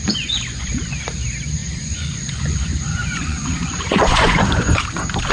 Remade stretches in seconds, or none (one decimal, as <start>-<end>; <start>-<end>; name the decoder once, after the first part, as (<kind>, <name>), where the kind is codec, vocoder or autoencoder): 0.0-1.0 (vocoder, Vocos); 1.6-4.8